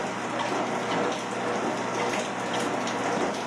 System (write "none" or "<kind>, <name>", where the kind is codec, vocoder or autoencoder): none